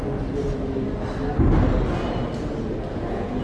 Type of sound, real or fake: real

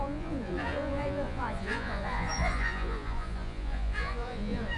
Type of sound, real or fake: fake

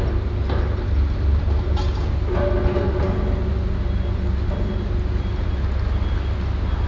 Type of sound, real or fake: real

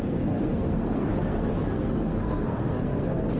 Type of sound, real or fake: fake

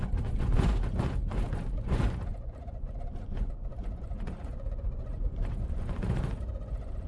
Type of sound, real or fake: fake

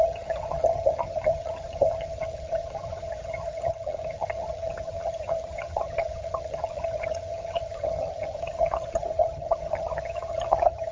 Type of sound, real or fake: fake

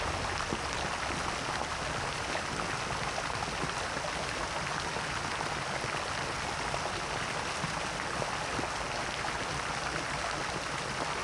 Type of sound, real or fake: real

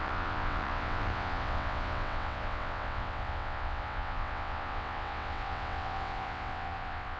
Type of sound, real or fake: fake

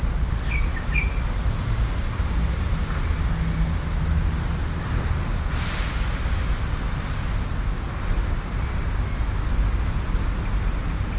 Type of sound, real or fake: real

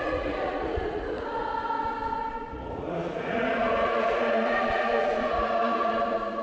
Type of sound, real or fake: fake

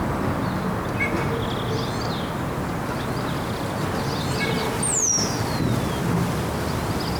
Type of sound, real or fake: real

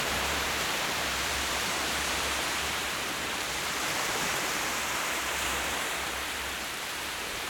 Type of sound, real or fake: fake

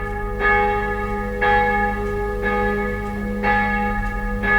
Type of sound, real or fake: real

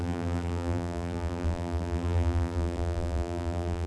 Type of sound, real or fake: fake